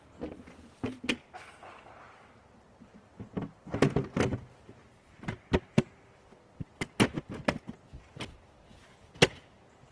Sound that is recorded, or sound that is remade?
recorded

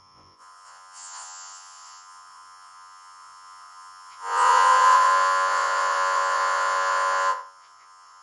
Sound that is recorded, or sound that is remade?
remade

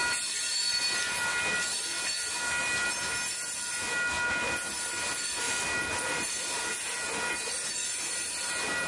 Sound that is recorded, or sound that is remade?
recorded